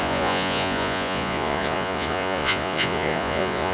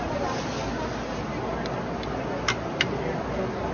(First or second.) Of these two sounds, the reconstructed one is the first